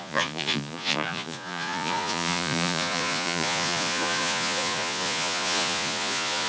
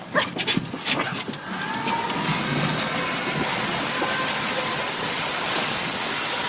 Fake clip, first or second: first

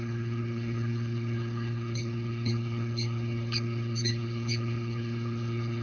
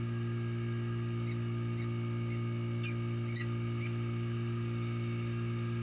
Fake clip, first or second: first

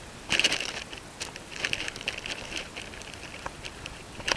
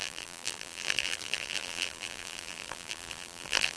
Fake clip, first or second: second